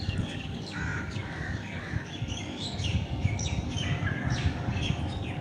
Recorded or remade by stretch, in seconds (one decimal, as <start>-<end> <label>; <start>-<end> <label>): 0.0-5.4 remade